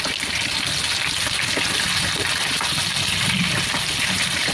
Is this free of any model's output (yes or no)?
yes